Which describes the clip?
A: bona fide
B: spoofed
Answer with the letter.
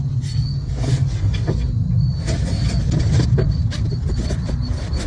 A